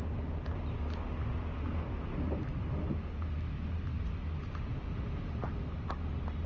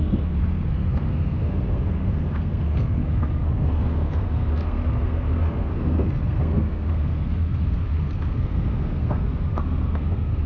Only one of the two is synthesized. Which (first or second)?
second